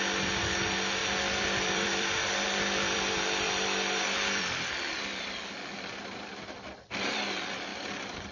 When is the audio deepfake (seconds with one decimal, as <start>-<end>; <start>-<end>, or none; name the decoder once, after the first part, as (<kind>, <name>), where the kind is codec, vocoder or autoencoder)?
1.0-5.5 (vocoder, BigVGAN v2); 7.7-8.3